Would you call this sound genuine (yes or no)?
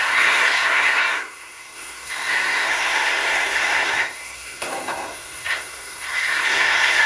no